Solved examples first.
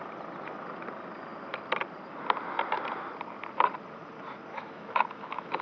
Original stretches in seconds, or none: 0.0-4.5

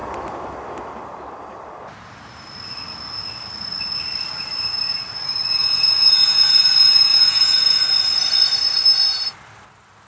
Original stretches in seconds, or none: 0.0-5.6; 6.6-7.1; 7.8-10.1

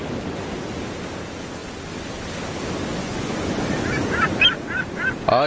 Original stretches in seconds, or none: 0.0-3.0; 3.6-5.5